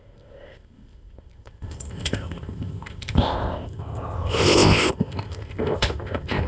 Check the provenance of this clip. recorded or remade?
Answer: remade